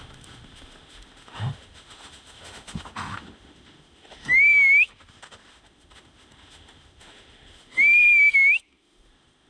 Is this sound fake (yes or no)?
yes